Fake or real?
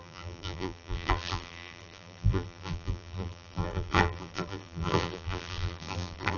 fake